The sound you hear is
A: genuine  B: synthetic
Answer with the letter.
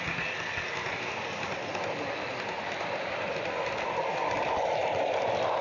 A